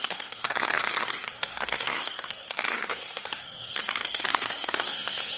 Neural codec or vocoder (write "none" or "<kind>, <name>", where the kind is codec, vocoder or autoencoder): codec, SNAC